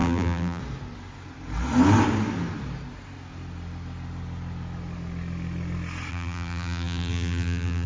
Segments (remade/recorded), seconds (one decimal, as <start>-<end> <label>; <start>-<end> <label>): 0.0-0.6 remade; 0.6-6.1 recorded; 6.1-7.9 remade